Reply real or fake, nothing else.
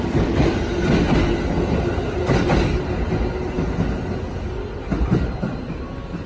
real